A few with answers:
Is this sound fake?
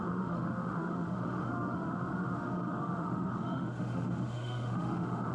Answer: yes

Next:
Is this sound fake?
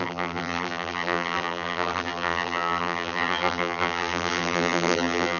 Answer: yes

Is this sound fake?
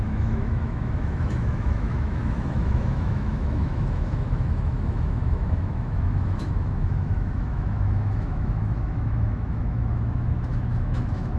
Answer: yes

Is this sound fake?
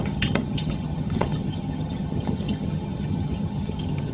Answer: yes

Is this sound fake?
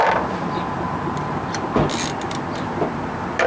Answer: no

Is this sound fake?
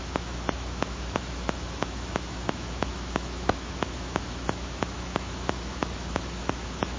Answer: yes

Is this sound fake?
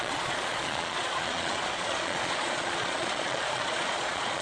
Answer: yes